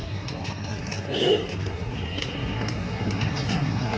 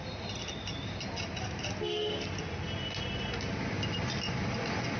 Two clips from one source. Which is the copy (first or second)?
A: first